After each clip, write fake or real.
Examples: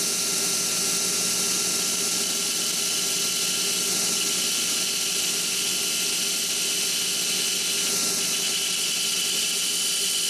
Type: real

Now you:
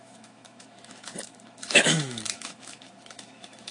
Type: fake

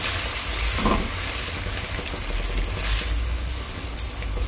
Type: real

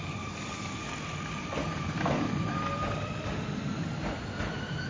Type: real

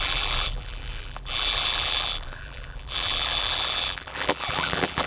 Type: fake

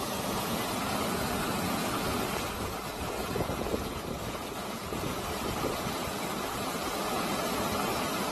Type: fake